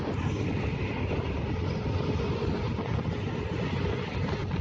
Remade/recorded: recorded